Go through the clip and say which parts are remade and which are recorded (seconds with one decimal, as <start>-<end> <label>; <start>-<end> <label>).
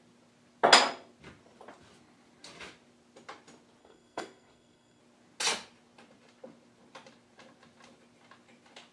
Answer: 0.0-3.8 recorded; 3.8-5.0 remade; 5.0-8.9 recorded